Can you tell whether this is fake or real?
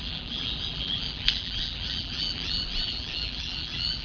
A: fake